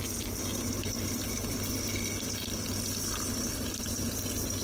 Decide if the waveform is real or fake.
real